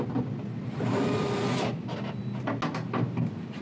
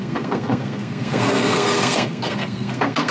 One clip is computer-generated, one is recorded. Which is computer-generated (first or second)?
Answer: second